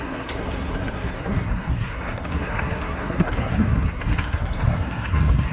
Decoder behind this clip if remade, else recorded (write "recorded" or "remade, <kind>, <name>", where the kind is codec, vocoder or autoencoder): remade, codec, SNAC